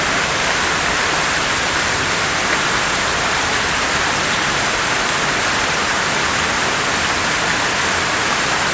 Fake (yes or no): no